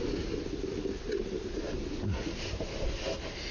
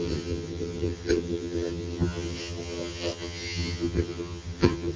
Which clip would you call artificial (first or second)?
second